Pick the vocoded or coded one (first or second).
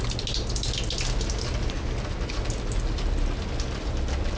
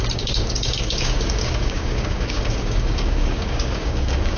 second